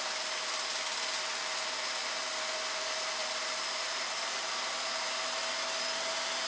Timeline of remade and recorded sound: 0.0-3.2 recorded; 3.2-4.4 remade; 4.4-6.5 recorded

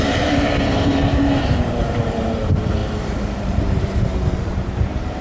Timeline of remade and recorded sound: 0.0-5.2 remade